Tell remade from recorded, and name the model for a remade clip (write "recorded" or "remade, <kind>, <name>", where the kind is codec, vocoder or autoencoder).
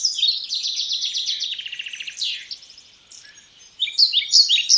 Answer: recorded